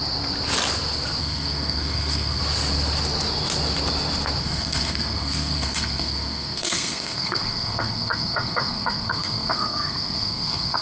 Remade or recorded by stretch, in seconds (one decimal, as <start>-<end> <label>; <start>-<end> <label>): 0.0-1.2 recorded; 1.2-2.4 remade; 2.4-4.4 recorded; 4.4-10.8 remade